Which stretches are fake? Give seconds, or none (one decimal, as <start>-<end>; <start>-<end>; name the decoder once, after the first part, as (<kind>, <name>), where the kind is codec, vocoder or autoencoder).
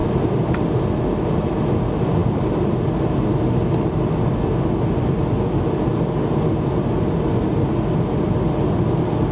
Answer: 0.0-0.6 (vocoder, BigVGAN v2)